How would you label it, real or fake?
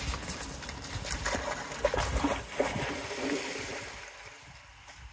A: real